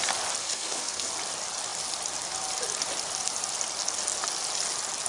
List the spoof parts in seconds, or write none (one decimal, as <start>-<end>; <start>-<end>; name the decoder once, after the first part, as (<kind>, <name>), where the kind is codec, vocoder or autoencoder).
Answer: 0.4-1.1 (codec, SNAC)